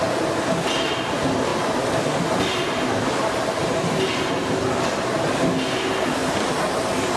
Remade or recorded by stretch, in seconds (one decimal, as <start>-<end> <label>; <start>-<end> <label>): 0.0-7.2 recorded